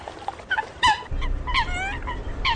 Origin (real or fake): real